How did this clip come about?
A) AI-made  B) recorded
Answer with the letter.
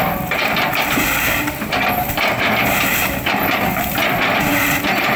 B